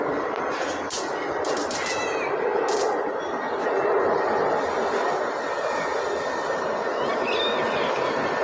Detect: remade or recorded recorded